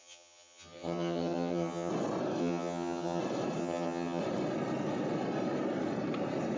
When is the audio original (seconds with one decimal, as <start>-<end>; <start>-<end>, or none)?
1.9-2.4; 3.2-3.6; 4.2-6.6